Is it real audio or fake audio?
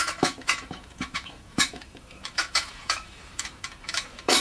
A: fake